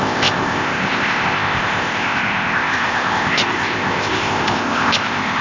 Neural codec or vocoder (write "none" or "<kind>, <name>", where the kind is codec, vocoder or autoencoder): codec, ZipCodec